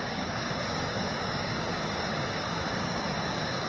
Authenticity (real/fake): fake